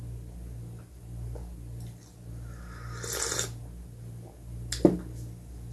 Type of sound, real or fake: real